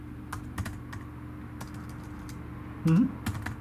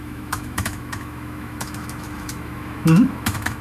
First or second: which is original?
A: first